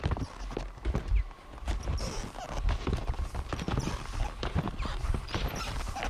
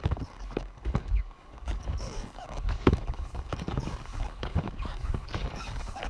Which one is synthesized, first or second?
second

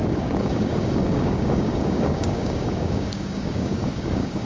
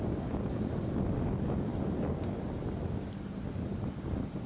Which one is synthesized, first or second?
first